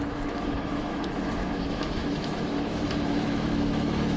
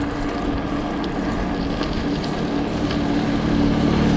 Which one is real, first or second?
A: second